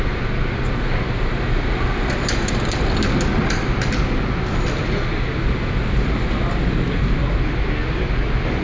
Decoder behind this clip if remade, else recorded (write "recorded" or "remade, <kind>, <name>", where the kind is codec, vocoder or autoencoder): recorded